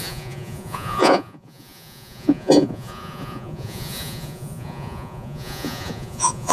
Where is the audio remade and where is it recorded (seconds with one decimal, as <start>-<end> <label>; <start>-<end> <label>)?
0.0-6.5 remade